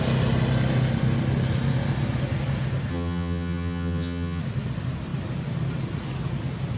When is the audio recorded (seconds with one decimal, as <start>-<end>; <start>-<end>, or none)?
0.0-2.9; 4.4-6.8

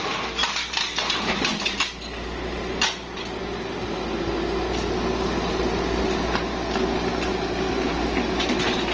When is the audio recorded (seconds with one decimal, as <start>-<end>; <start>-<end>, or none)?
0.0-8.9

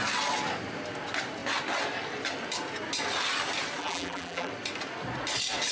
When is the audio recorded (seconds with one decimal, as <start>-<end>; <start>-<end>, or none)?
0.0-3.8; 4.5-5.7

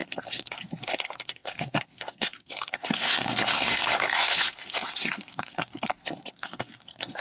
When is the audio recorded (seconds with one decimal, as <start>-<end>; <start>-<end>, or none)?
none

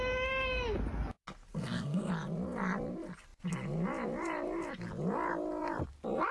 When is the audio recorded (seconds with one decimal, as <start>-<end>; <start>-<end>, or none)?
0.0-1.5; 2.1-6.3